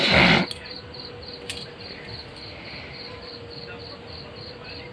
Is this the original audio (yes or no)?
yes